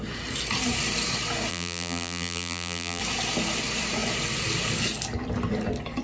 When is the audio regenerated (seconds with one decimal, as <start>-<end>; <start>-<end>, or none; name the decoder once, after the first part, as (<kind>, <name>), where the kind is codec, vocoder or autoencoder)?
1.5-3.0 (vocoder, BigVGAN v2)